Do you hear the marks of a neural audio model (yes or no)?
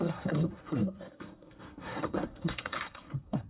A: yes